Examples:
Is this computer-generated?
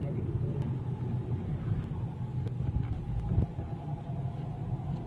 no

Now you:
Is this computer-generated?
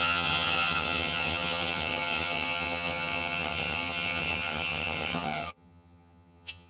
yes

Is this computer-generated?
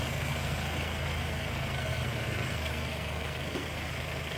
yes